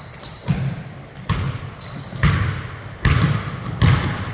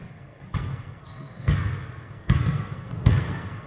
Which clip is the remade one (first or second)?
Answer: second